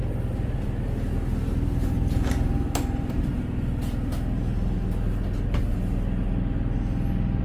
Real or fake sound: real